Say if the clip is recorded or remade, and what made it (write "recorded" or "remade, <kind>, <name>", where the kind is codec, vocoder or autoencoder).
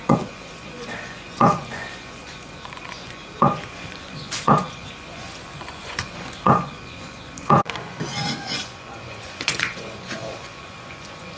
remade, vocoder, Vocos